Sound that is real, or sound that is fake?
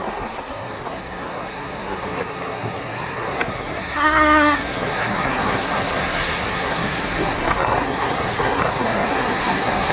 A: fake